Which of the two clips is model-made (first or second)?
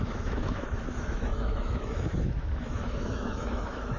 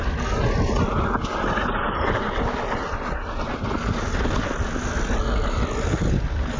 first